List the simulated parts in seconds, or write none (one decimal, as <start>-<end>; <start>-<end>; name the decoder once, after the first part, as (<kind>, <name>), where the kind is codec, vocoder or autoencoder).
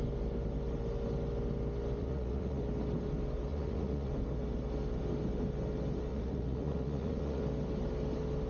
2.0-2.6 (vocoder, Vocos); 3.5-4.1; 6.1-7.4